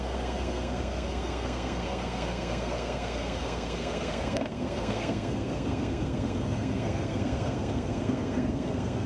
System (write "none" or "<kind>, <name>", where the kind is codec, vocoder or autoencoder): codec, SNAC